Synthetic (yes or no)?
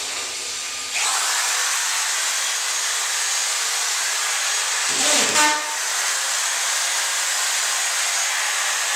no